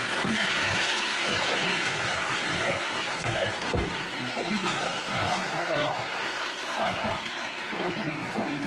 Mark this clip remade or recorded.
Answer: remade